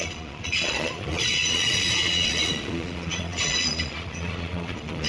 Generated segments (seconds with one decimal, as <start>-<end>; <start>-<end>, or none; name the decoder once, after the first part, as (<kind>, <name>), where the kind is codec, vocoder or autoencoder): 0.0-5.1 (vocoder, Vocos)